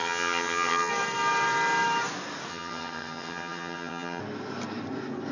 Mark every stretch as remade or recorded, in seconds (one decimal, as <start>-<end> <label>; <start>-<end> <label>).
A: 0.0-0.9 remade; 0.9-2.5 recorded; 2.5-4.2 remade; 4.2-5.3 recorded